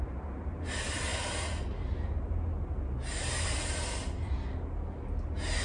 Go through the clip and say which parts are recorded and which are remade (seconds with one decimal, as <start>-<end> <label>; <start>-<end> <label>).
0.0-5.6 recorded